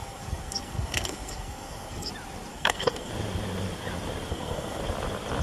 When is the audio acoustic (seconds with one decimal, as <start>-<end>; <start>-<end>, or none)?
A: 2.1-2.5; 3.1-4.3; 4.8-5.4